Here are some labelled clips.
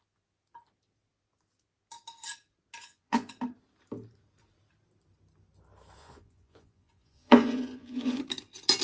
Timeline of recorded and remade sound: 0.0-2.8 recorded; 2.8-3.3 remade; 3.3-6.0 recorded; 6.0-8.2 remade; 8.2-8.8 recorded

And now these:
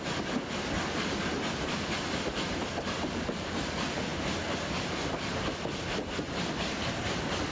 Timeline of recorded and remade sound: 0.0-7.5 recorded

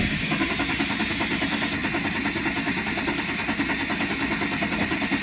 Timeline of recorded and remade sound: 0.0-5.2 recorded